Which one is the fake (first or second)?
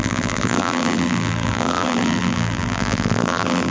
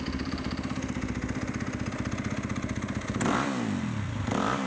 first